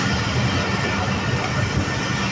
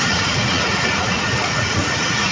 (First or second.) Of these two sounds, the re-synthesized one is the second